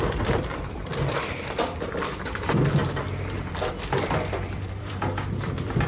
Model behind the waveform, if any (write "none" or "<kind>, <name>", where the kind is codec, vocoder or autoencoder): vocoder, BigVGAN v2